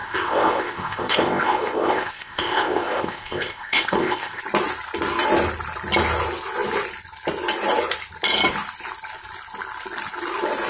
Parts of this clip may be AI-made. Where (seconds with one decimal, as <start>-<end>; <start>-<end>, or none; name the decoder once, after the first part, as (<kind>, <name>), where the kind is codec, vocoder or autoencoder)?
0.0-4.4 (codec, ZipCodec)